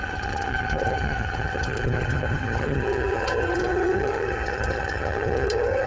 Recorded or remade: remade